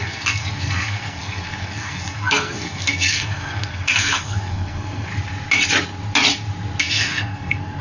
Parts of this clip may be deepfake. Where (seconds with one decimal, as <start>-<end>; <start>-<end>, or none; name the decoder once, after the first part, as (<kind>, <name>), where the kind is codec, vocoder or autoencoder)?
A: 0.0-5.1 (codec, SNAC); 6.8-7.8